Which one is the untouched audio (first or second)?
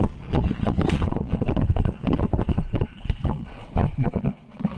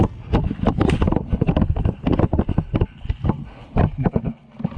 second